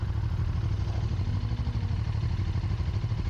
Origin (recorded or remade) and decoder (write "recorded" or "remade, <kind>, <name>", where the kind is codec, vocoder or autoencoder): recorded